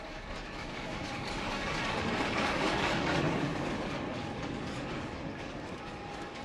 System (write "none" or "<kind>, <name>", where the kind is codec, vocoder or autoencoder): codec, DAC